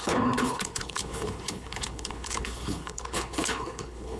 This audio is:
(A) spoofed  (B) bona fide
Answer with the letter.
A